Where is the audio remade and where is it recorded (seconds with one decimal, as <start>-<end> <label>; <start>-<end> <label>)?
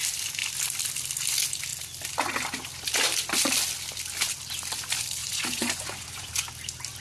0.0-5.2 recorded; 5.2-6.3 remade; 6.3-7.0 recorded